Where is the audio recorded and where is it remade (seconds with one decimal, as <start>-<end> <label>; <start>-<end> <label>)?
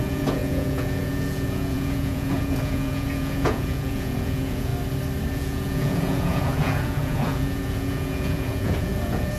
0.0-4.7 remade; 4.7-5.3 recorded; 5.3-9.4 remade